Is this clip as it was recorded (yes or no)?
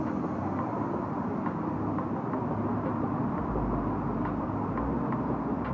yes